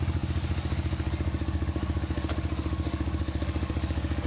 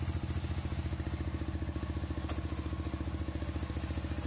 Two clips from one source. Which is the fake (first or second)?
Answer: first